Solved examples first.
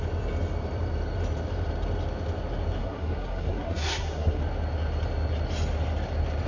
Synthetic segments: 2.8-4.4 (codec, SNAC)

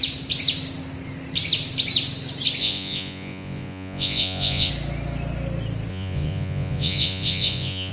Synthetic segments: 2.6-4.7 (vocoder, Vocos); 5.9-7.9

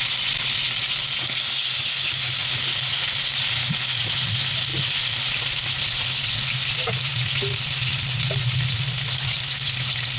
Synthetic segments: none

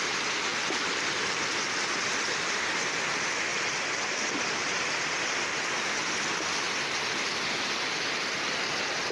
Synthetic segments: none

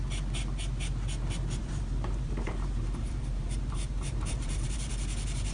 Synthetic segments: 1.6-4.9 (vocoder, BigVGAN v2)

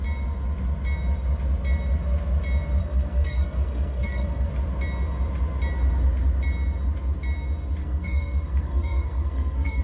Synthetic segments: 2.8-4.5 (codec, SNAC); 7.8-9.8